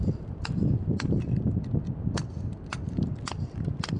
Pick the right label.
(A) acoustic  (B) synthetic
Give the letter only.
A